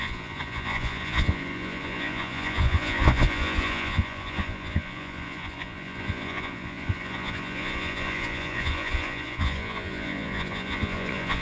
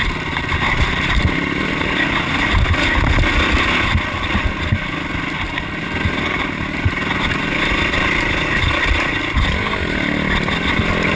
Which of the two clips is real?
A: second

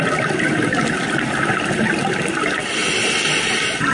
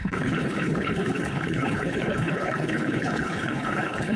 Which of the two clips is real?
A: first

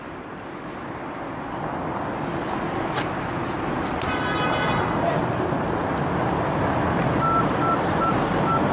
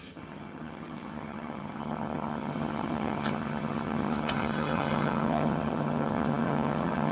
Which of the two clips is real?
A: first